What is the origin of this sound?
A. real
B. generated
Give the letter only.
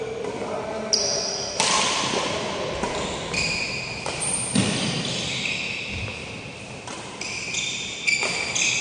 A